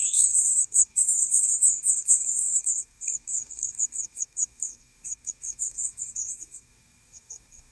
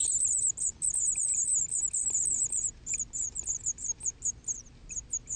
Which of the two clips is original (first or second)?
second